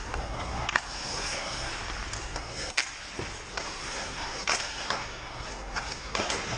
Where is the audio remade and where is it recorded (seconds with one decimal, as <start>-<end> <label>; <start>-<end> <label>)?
0.0-1.7 remade; 1.7-2.2 recorded; 2.2-2.8 remade; 2.8-3.5 recorded; 3.5-6.6 remade